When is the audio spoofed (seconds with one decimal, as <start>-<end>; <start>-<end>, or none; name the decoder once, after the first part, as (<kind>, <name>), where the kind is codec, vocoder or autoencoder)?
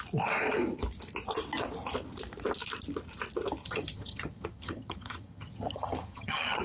3.6-6.6 (vocoder, HiFi-GAN)